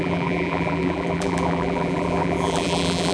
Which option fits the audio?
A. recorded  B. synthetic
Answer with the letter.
B